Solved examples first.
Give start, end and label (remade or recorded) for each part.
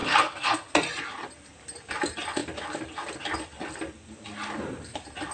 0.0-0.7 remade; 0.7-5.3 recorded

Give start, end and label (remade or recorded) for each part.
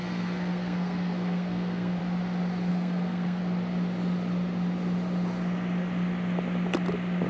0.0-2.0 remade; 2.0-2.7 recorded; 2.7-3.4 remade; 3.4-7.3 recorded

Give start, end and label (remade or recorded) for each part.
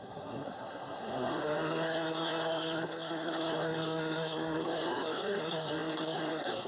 0.0-6.7 remade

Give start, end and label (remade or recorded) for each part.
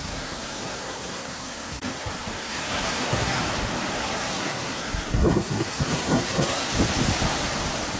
0.0-3.4 remade; 3.4-3.9 recorded; 3.9-6.7 remade; 6.7-8.0 recorded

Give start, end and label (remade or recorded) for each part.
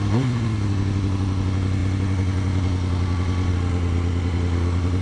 0.0-5.0 recorded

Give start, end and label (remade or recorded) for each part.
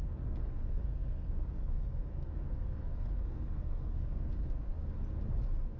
0.0-4.7 remade; 4.7-5.8 recorded